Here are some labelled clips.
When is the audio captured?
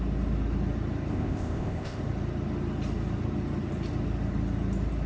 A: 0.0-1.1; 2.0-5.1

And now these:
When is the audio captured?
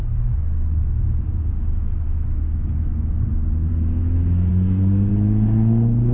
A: 0.0-4.5; 5.1-6.1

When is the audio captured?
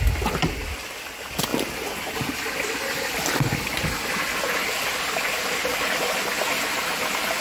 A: 0.0-7.4